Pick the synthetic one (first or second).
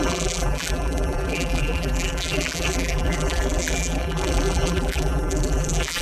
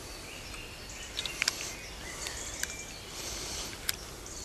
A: first